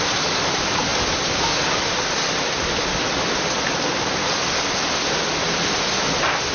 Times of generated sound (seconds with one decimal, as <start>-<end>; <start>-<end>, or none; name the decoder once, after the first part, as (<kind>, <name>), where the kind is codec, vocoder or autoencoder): none